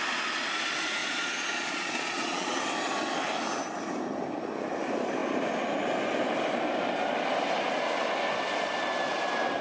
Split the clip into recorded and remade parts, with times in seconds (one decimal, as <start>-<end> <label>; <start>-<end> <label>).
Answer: 0.0-1.0 recorded; 1.0-2.6 remade; 2.6-9.6 recorded